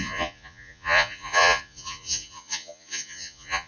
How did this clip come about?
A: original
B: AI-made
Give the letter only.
B